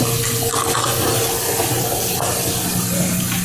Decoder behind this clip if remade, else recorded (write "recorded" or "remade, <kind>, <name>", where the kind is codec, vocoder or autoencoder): recorded